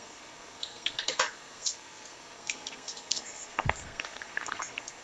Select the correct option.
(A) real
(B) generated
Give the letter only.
B